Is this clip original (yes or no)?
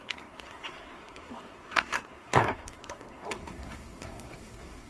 no